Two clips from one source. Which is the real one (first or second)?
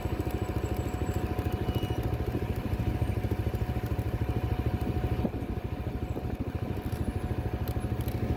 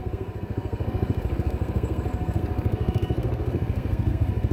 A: first